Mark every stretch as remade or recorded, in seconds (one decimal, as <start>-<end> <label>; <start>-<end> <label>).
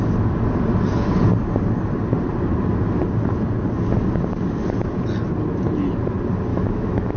0.0-6.5 recorded; 6.5-7.2 remade